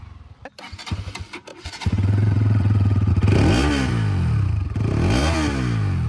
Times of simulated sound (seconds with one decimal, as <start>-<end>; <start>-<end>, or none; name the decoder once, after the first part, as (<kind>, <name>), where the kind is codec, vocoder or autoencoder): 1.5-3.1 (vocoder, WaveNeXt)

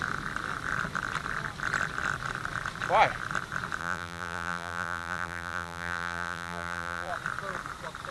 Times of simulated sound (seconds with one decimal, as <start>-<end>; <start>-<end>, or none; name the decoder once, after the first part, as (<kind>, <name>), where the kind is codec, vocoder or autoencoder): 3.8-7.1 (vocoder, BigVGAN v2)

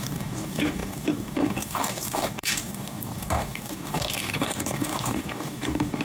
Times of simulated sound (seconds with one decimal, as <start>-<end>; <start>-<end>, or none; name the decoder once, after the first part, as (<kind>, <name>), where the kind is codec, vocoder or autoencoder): 0.0-6.0 (codec, DAC)